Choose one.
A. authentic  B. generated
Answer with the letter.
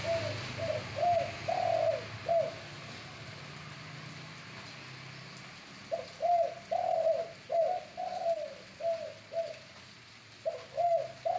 A